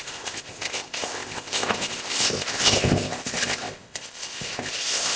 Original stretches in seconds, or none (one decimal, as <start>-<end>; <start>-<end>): none